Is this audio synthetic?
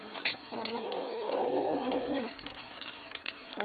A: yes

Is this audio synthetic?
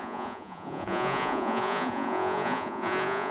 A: yes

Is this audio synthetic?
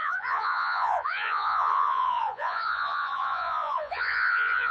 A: yes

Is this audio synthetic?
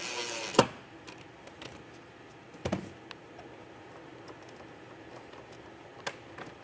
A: no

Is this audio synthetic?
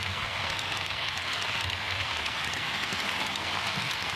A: yes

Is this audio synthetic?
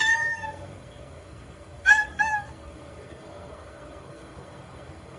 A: yes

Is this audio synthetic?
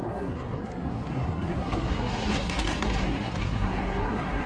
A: yes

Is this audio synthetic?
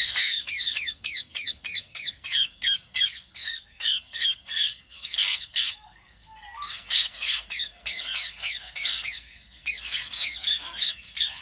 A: yes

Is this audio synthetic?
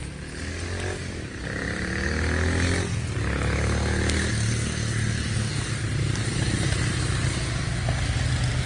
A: no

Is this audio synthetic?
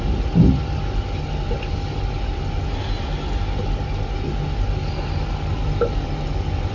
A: no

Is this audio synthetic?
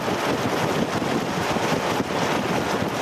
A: no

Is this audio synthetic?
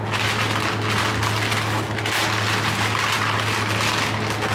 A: no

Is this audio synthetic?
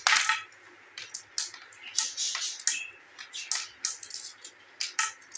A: no